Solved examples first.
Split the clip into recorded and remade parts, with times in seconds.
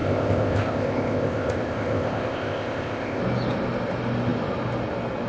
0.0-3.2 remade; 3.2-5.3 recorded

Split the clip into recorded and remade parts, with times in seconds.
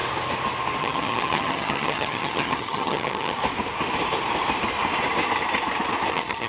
0.0-0.8 recorded; 0.8-3.4 remade; 3.4-6.1 recorded; 6.1-6.5 remade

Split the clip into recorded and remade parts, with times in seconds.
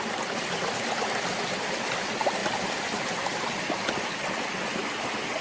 0.0-5.4 recorded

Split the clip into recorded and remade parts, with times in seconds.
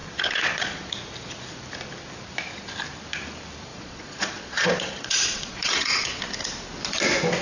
0.0-0.9 remade; 0.9-3.7 recorded; 3.7-6.2 remade; 6.2-7.4 recorded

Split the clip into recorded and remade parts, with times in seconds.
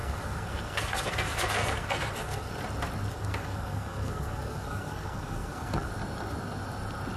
0.0-2.5 remade; 2.5-3.1 recorded; 3.1-5.9 remade; 5.9-7.2 recorded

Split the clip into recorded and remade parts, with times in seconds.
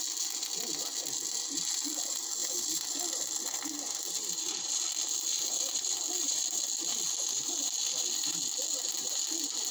0.0-2.4 recorded; 2.4-6.7 remade; 6.7-9.7 recorded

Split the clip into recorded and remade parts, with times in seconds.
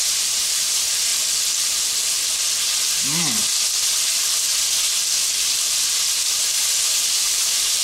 0.0-1.1 remade; 1.1-2.5 recorded; 2.5-3.4 remade; 3.4-6.4 recorded; 6.4-7.8 remade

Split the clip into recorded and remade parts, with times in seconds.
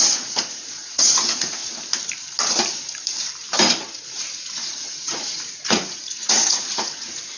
0.0-1.6 remade; 1.6-3.8 recorded; 3.8-7.4 remade